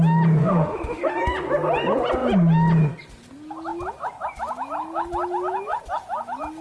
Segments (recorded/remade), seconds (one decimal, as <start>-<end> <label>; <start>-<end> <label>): 0.0-0.4 recorded; 0.4-1.1 remade; 1.1-6.6 recorded